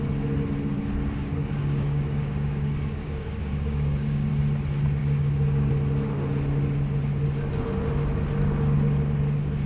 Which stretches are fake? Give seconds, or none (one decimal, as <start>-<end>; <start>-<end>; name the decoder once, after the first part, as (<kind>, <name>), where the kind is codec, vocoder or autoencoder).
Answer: 1.2-4.3 (codec, DAC); 5.0-5.7